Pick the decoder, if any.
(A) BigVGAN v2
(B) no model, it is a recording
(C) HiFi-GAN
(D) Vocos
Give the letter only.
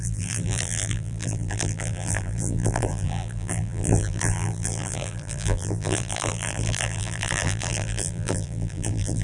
A